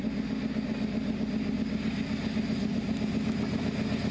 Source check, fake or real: real